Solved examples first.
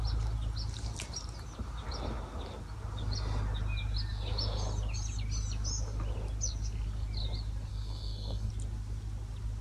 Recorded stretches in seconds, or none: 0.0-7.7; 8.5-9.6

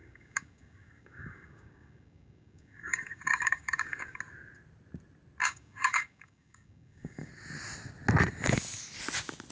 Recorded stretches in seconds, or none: 4.2-5.4; 7.3-9.5

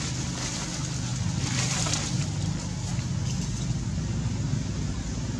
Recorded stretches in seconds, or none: 0.0-5.4

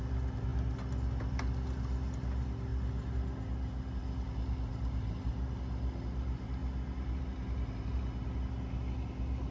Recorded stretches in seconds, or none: 0.0-4.7; 5.3-9.5

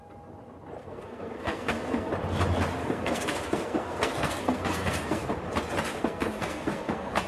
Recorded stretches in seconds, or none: 0.0-0.8; 2.1-2.8; 5.3-5.9

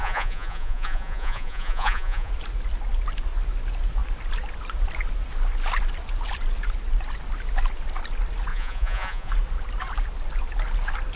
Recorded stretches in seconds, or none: 2.3-8.5; 9.3-11.2

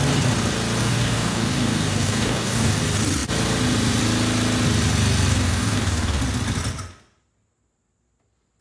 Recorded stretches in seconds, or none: 0.0-0.8; 2.8-5.3; 6.2-8.6

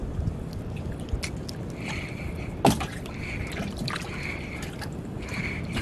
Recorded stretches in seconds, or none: 0.0-5.8